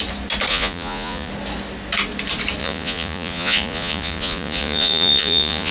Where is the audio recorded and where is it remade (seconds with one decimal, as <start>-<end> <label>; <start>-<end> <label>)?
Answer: 0.0-0.5 recorded; 0.5-1.3 remade; 1.3-2.6 recorded; 2.6-5.7 remade